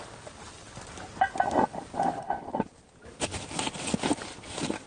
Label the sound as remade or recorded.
recorded